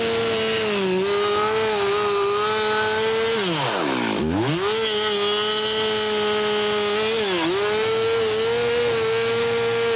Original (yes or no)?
yes